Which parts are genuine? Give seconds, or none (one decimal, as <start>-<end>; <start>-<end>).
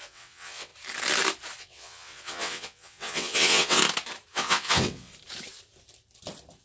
0.7-1.6; 3.8-4.3; 5.1-6.6